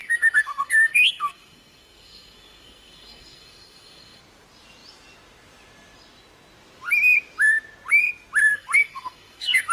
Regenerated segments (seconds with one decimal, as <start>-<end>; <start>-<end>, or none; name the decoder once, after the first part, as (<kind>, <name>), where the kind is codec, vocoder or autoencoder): 0.0-4.2 (codec, SNAC); 8.5-9.7